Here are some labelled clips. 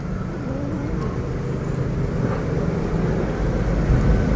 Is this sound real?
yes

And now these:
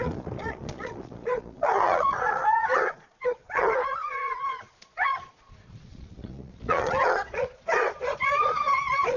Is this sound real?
no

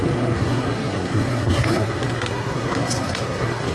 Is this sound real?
no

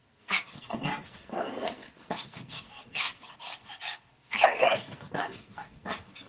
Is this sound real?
no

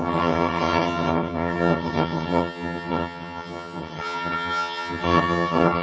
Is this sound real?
no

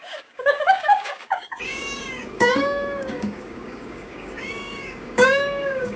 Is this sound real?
no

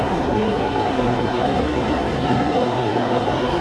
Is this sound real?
no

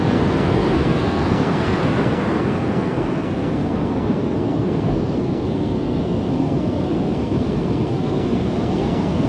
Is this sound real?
no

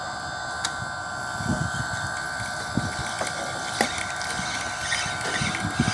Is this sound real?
yes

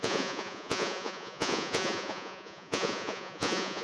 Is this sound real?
no